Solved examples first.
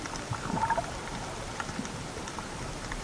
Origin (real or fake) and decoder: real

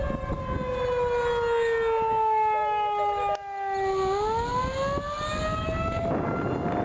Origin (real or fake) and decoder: real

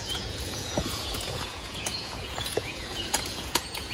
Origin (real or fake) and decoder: fake, vocoder, Vocos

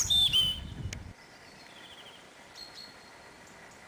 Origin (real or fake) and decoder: real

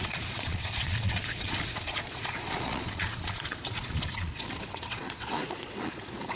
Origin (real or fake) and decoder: fake, vocoder, Vocos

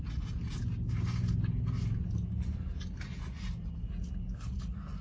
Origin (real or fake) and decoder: real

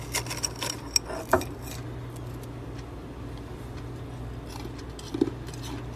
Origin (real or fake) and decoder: real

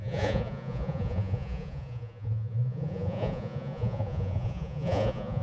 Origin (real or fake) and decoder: fake, vocoder, Vocos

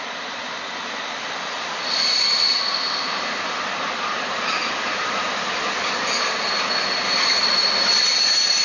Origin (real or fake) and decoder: real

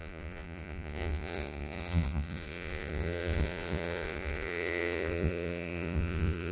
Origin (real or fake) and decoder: fake, vocoder, Vocos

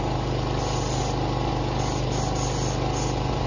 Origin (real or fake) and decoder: real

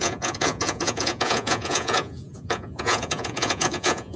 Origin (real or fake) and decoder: fake, vocoder, Vocos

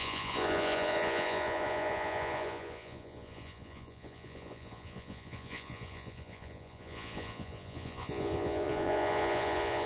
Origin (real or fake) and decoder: fake, vocoder, Vocos